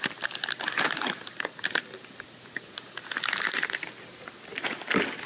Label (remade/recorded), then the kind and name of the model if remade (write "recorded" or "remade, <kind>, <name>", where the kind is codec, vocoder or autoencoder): recorded